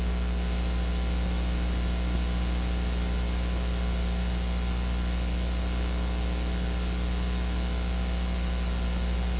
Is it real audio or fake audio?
real